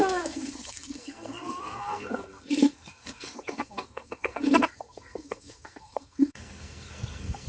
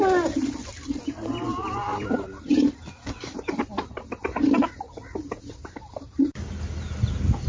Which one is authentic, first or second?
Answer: second